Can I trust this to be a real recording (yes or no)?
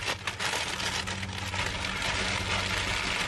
yes